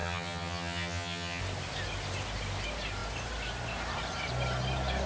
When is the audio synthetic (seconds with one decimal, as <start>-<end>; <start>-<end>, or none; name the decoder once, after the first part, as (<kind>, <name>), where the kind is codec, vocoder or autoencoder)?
0.0-1.4 (vocoder, HiFi-GAN)